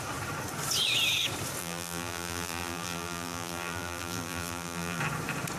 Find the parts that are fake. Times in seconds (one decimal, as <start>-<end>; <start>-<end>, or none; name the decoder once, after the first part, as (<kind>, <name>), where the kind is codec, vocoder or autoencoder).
1.6-5.0 (vocoder, BigVGAN v2)